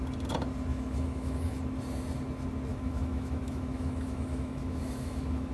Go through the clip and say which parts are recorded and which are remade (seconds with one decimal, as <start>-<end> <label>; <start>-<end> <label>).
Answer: 0.0-0.7 recorded; 0.7-1.6 remade; 1.6-2.7 recorded; 2.7-5.5 remade